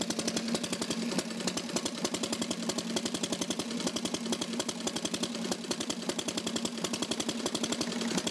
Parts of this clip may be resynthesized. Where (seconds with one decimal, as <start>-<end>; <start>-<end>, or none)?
none